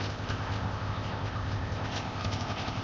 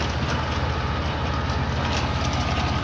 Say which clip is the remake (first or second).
first